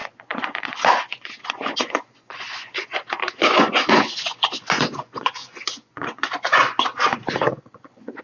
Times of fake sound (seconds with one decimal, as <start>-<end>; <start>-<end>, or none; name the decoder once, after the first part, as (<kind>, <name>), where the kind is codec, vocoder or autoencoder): 0.0-8.2 (vocoder, Vocos)

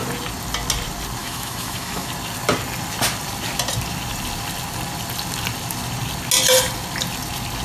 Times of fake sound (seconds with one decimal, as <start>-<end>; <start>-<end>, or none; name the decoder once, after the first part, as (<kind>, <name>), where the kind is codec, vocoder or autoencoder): 1.2-2.1 (autoencoder, DAC-VAE)